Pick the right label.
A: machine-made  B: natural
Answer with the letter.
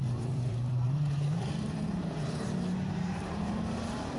A